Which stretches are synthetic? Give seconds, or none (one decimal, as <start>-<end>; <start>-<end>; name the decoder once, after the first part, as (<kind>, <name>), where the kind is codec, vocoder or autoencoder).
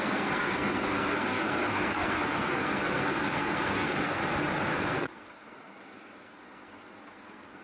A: 0.0-4.2 (codec, SNAC); 4.7-7.6